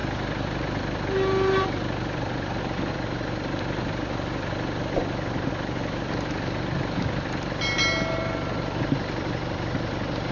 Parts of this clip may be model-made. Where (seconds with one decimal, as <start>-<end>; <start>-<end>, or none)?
none